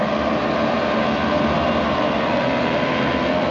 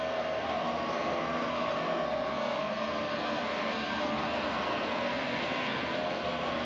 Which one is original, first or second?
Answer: first